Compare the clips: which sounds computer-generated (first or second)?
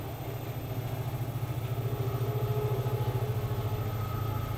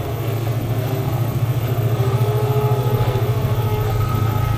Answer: second